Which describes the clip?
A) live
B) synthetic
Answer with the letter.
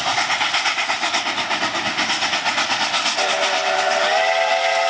A